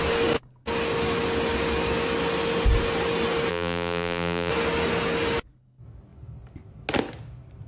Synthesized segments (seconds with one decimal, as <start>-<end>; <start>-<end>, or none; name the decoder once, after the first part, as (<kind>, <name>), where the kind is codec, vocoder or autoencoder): 3.5-4.5 (vocoder, BigVGAN v2)